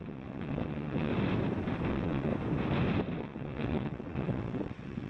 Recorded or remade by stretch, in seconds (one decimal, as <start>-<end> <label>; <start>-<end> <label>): 0.0-1.1 remade; 1.1-1.9 recorded; 1.9-2.3 remade; 2.3-3.2 recorded; 3.2-5.1 remade